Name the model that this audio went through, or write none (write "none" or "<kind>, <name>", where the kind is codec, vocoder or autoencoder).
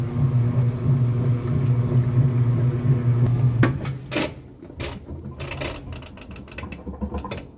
none